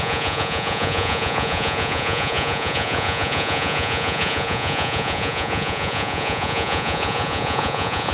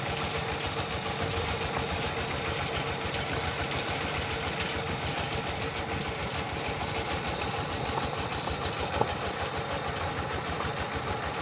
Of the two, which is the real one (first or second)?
second